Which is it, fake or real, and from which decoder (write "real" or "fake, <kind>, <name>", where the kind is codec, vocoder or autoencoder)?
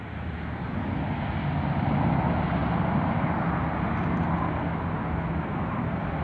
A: real